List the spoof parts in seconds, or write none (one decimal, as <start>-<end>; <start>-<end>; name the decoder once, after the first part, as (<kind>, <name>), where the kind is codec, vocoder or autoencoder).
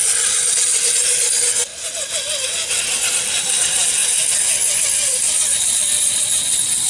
none